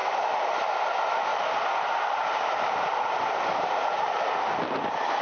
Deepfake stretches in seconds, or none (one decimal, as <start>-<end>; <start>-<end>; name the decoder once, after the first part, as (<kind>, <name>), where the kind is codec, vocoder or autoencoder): 0.0-0.7 (vocoder, BigVGAN v2); 1.3-4.4